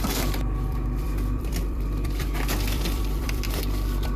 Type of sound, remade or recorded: remade